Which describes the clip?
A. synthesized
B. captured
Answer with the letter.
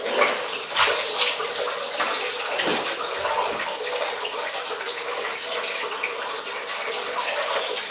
B